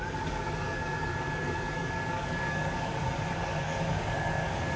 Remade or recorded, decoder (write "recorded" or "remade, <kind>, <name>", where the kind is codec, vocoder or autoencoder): remade, codec, DAC